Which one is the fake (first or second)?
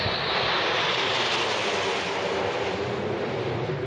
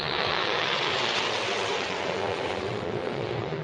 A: second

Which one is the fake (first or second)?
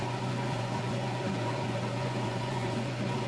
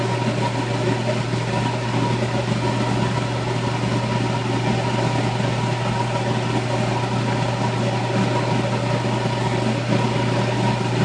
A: first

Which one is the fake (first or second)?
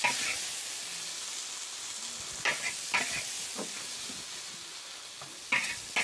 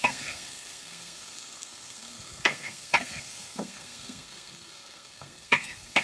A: second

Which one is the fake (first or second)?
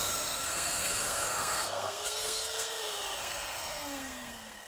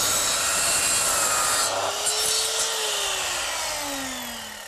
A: first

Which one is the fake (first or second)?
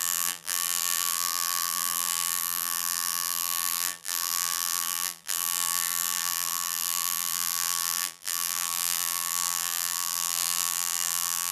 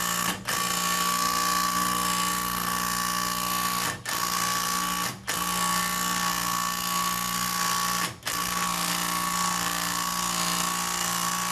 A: first